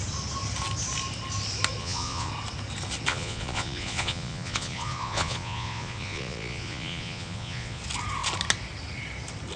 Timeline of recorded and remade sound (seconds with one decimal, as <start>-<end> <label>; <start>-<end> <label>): 0.0-1.8 recorded; 1.8-2.3 remade; 2.3-3.1 recorded; 3.1-7.8 remade; 7.8-9.6 recorded